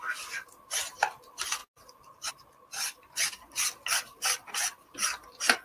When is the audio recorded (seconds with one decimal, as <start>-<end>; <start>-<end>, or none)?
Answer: 0.0-5.6